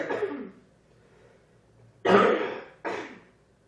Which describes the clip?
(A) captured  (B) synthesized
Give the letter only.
A